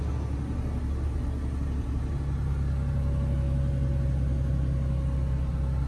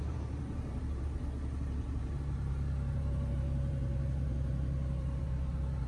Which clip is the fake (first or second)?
second